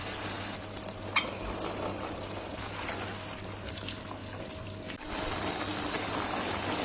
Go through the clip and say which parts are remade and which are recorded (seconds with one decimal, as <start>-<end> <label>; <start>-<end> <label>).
0.0-4.2 recorded; 4.2-5.8 remade; 5.8-6.8 recorded